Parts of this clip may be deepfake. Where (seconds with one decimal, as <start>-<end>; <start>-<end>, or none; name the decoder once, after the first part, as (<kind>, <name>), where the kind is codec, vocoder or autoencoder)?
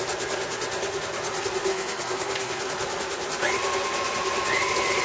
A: 1.7-2.6 (codec, SNAC)